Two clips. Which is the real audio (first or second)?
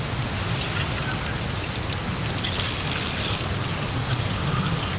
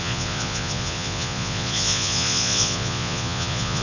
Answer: first